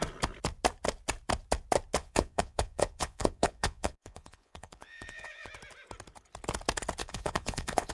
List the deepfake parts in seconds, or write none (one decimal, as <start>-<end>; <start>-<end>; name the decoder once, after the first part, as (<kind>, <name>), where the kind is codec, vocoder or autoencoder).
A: 2.0-5.5 (vocoder, Vocos); 7.0-7.9